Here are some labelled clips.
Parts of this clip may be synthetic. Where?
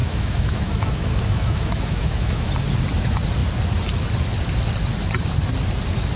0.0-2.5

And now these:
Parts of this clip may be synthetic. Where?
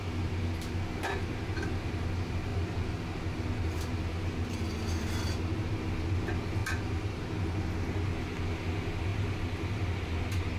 6.6-7.2; 9.1-9.8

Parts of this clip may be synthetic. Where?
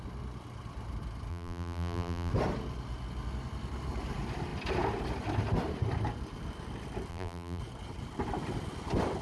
1.3-2.3; 7.1-7.6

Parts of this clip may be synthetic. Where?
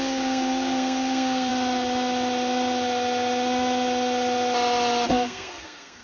0.0-1.5; 5.1-6.0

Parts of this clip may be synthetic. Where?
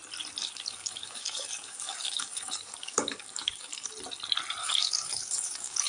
0.4-3.9; 4.6-5.9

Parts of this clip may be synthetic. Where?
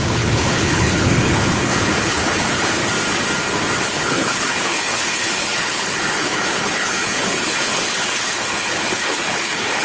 0.0-2.8; 3.7-9.8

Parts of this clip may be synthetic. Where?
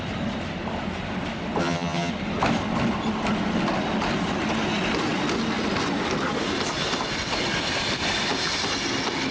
1.6-2.1